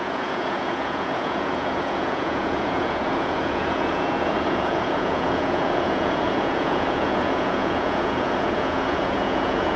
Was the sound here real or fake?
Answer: fake